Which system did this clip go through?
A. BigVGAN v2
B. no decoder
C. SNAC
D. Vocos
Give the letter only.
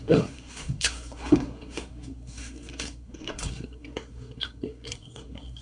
C